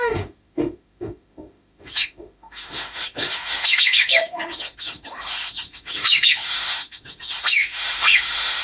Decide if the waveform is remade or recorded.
remade